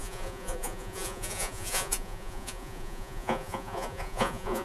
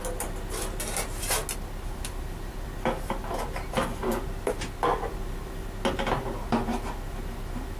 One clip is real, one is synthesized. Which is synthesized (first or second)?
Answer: first